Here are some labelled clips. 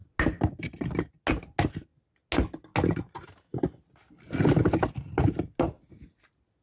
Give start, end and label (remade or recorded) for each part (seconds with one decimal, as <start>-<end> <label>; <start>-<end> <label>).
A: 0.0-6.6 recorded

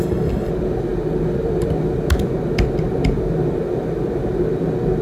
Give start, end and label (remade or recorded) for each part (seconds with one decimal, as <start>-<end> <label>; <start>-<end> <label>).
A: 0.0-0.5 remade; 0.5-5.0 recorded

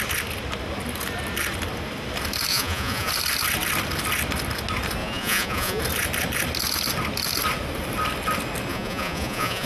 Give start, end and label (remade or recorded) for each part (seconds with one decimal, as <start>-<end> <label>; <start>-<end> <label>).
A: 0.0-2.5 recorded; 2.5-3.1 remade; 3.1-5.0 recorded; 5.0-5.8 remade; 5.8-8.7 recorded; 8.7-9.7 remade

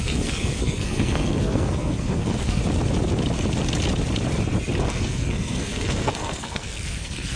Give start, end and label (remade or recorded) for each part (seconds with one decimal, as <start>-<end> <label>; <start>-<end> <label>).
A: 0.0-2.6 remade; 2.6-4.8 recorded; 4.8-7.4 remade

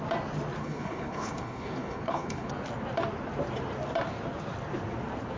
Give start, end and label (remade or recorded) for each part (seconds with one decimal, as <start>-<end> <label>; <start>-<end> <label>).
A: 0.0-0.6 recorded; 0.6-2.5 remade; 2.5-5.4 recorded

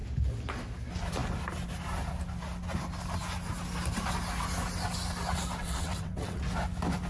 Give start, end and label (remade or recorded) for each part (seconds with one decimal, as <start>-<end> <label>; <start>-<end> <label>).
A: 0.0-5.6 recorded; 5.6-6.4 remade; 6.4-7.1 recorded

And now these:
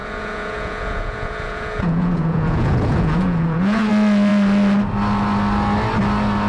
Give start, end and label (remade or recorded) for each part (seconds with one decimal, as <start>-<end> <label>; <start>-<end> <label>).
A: 0.0-3.9 remade; 3.9-6.5 recorded

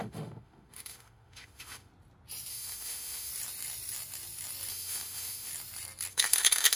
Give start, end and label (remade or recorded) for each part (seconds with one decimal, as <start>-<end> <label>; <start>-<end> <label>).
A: 0.0-1.9 remade; 1.9-2.5 recorded; 2.5-3.3 remade; 3.3-4.7 recorded; 4.7-5.5 remade; 5.5-6.1 recorded; 6.1-6.8 remade